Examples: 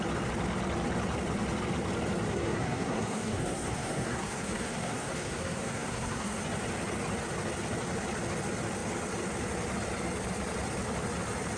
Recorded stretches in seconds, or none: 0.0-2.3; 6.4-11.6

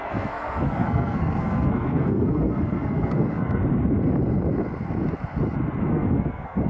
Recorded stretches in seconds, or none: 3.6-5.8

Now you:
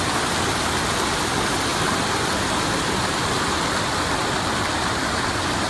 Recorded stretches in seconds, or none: 0.0-5.7

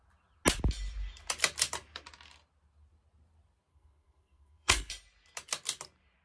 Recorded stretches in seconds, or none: 0.0-3.7; 4.9-6.2